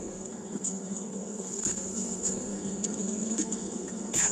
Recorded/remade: remade